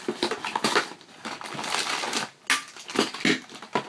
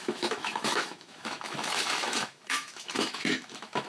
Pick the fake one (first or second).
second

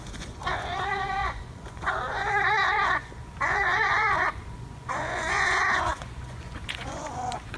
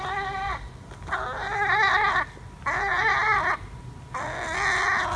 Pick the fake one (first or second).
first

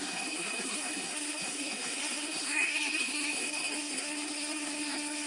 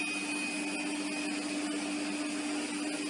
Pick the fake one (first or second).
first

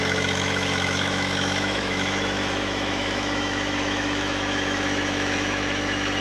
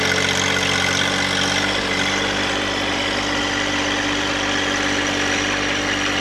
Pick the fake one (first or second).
first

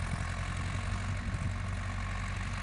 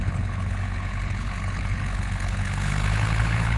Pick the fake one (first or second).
second